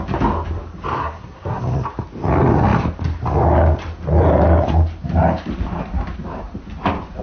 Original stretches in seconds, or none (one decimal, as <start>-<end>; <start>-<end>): 0.0-1.0; 1.6-7.2